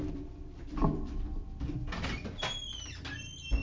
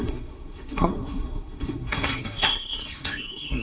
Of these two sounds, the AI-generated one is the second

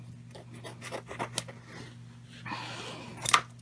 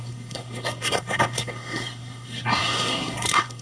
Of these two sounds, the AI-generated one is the second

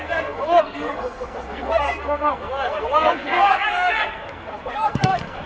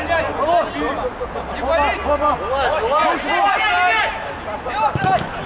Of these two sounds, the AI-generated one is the first